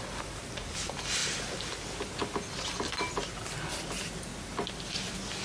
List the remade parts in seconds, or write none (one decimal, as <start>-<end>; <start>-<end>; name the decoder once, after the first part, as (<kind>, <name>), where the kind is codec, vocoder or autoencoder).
0.0-1.2 (vocoder, BigVGAN v2); 3.7-4.3; 4.8-5.4